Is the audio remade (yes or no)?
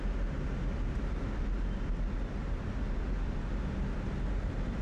no